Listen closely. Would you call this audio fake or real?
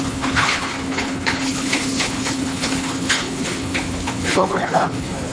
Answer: fake